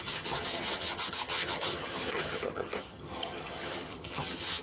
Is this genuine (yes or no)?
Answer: no